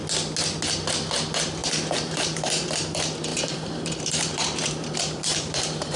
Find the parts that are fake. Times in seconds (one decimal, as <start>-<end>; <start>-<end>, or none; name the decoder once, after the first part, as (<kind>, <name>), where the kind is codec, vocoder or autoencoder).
1.6-2.8 (vocoder, BigVGAN v2); 3.3-6.0